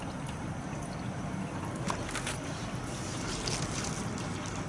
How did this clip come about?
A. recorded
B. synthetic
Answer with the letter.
A